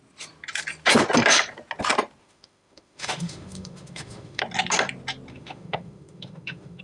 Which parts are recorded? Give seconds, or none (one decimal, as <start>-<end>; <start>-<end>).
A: 0.0-2.2; 4.4-5.3